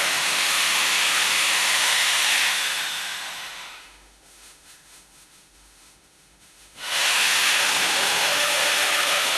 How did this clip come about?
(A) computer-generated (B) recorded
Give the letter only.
A